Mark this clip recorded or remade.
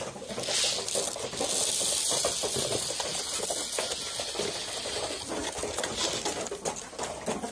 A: recorded